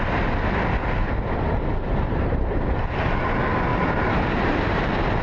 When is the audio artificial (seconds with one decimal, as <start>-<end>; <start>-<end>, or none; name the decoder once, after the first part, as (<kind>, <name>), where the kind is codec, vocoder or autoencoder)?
1.0-2.6 (vocoder, BigVGAN v2); 3.7-4.8